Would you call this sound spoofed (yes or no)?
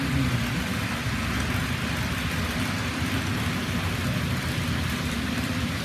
no